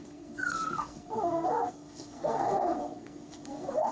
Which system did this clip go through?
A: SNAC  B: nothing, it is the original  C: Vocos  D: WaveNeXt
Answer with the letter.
A